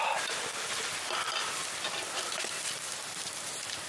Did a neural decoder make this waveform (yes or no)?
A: no